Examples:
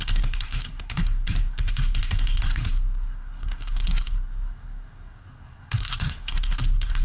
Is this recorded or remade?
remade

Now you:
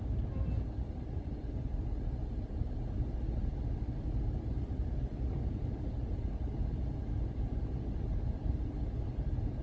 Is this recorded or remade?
recorded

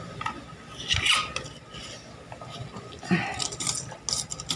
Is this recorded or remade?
recorded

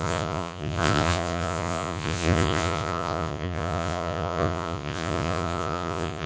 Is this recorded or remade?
remade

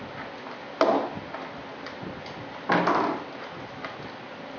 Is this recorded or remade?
recorded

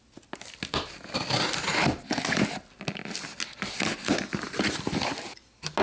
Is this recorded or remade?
recorded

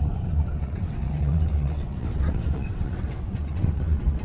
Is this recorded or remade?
remade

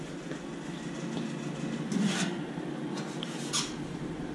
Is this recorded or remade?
recorded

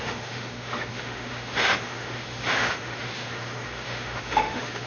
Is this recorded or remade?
remade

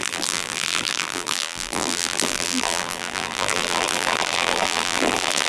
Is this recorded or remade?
remade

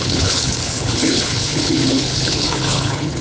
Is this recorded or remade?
remade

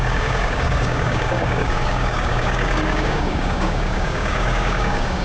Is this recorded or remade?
remade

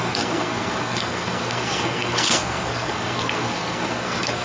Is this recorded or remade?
remade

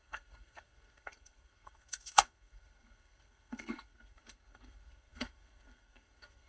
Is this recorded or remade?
remade